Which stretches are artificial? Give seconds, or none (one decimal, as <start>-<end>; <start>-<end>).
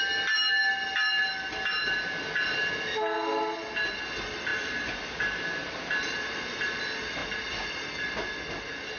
4.5-6.8